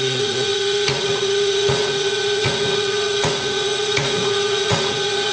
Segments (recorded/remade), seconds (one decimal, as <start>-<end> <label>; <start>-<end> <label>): 0.0-5.3 remade